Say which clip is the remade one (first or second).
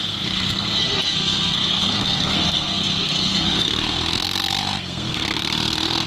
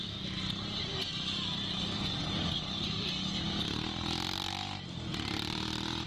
first